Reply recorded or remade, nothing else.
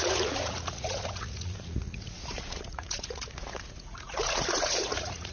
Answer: remade